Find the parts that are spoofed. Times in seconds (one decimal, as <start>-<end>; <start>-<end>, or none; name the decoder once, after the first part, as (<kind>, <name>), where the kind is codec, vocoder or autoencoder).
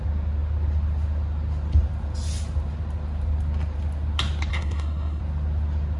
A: 4.5-5.2 (codec, SNAC)